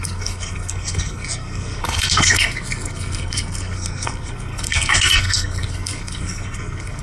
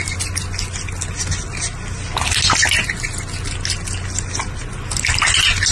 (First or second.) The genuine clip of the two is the second